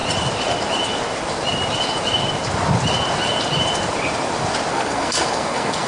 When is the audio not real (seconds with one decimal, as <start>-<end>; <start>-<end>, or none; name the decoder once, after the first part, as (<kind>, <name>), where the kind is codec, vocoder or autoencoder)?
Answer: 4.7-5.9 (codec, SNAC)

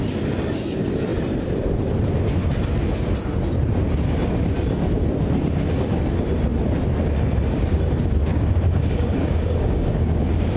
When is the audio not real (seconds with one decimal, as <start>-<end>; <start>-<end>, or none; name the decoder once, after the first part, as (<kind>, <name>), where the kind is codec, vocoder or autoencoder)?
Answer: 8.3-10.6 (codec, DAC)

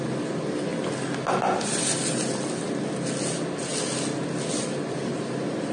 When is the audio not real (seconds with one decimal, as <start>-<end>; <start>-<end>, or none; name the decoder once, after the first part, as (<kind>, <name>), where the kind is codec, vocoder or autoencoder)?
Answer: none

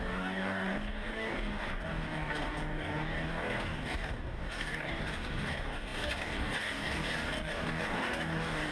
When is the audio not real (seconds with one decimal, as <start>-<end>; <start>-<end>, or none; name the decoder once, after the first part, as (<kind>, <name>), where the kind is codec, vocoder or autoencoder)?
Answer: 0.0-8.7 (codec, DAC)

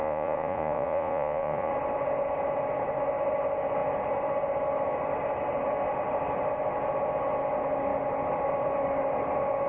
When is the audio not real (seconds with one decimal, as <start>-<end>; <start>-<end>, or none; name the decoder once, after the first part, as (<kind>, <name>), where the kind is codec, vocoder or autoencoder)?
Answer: 0.0-1.7 (vocoder, Vocos)